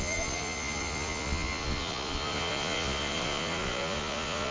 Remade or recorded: remade